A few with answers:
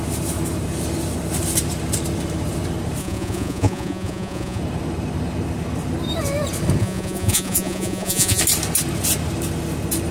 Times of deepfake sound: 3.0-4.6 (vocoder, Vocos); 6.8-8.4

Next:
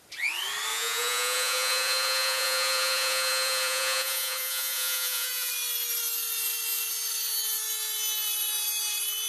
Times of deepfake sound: 0.7-5.5 (vocoder, Vocos)

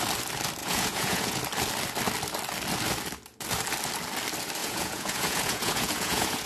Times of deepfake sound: 0.6-1.4 (vocoder, Vocos); 4.6-6.5

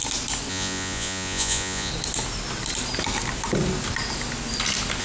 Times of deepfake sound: 0.5-1.9 (vocoder, Vocos)

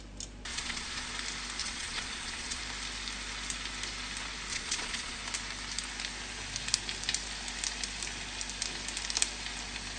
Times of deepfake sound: 0.5-1.1 (vocoder, Vocos); 1.6-2.6; 4.5-5.2

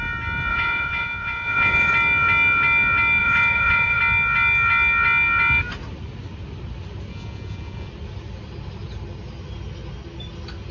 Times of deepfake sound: 0.5-1.9 (vocoder, Vocos); 3.2-4.0; 7.1-7.9

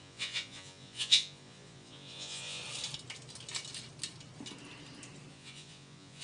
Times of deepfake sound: 0.0-2.6 (vocoder, Vocos); 5.3-6.2

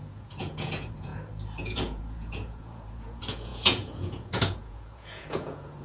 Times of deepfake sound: 0.0-1.1 (vocoder, Vocos); 1.6-5.8